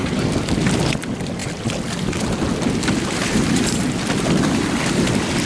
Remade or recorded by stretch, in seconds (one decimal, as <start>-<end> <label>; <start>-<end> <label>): 0.0-5.5 recorded